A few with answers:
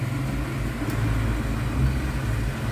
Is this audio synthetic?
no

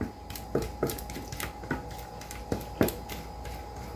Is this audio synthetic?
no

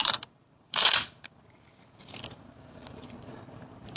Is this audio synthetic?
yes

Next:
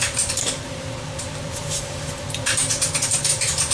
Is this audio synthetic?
yes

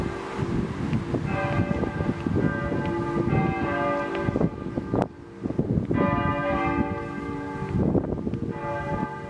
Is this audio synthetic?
no